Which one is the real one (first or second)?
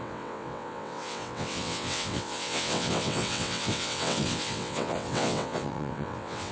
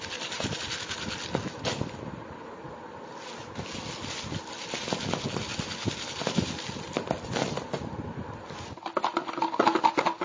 second